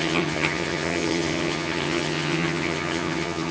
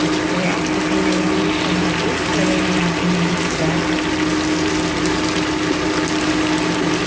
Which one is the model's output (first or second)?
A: first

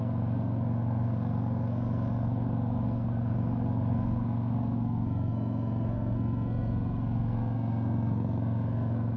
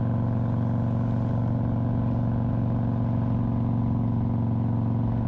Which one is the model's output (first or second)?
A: first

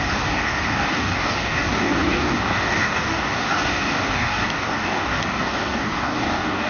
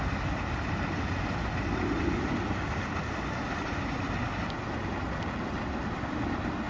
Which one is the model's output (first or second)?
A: first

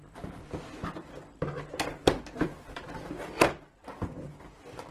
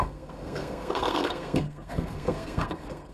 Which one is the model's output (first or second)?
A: second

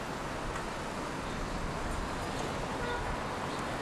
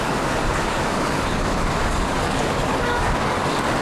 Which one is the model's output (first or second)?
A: second